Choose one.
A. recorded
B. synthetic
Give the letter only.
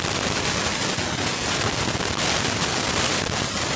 A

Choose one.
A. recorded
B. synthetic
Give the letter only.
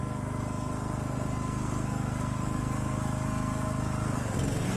B